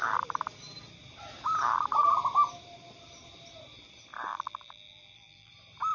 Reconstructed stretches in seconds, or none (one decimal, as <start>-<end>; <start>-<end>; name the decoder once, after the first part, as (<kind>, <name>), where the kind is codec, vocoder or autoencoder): 4.3-5.5 (vocoder, BigVGAN v2)